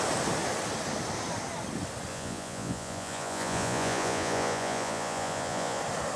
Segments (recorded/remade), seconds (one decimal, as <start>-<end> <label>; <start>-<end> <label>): 0.0-2.1 recorded; 2.1-5.8 remade; 5.8-6.2 recorded